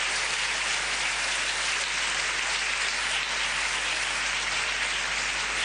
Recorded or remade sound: recorded